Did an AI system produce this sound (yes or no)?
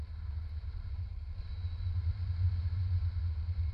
no